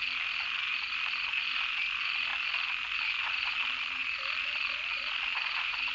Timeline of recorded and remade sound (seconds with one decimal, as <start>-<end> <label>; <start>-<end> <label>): 0.0-5.9 recorded